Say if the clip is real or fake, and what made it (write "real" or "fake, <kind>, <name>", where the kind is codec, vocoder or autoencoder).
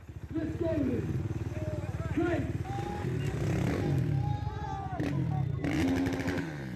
real